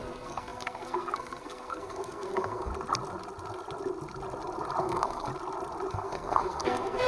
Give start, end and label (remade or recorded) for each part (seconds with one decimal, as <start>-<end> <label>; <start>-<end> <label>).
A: 0.0-2.7 remade; 2.7-4.8 recorded; 4.8-5.3 remade; 5.3-5.9 recorded; 5.9-7.1 remade